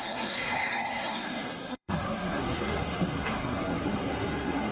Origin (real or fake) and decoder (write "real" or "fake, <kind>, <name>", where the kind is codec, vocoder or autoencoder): fake, codec, SNAC